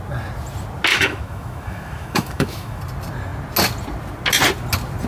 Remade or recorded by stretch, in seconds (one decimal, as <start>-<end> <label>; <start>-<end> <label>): 0.0-0.9 recorded; 0.9-2.8 remade; 2.8-5.1 recorded